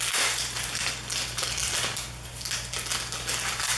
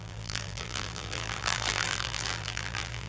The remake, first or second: second